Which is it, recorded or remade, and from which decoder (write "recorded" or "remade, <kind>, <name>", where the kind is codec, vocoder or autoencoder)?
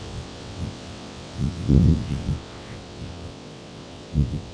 remade, vocoder, WaveNeXt